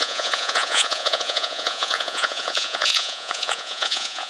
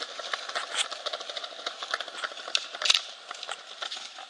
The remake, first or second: first